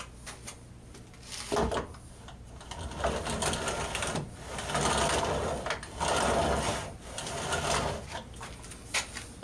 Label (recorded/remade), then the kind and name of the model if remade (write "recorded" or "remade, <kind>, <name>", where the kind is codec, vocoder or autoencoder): recorded